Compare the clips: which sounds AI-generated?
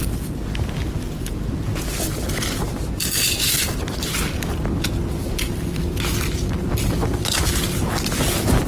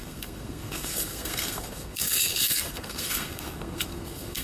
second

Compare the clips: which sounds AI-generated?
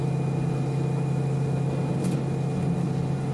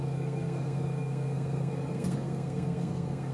second